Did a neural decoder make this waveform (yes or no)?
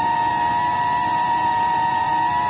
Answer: yes